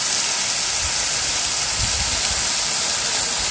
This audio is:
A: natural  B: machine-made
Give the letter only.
A